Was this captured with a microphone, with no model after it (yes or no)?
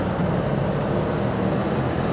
yes